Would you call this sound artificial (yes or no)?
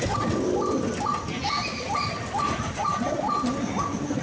no